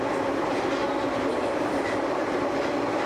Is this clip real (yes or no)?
yes